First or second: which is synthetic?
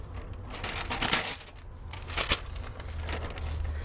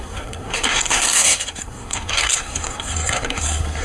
second